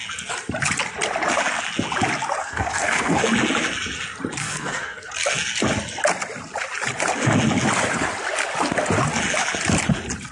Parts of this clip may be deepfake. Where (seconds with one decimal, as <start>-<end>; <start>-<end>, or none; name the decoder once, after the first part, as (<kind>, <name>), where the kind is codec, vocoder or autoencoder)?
2.4-3.2 (codec, SNAC); 4.4-5.1